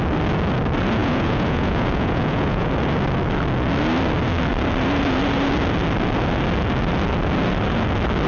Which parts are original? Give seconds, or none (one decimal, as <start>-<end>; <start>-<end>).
0.0-1.0; 2.7-8.3